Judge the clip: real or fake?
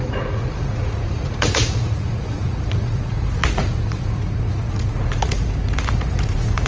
fake